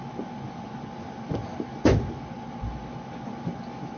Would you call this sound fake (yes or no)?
no